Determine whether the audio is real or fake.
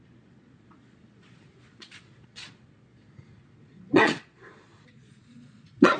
fake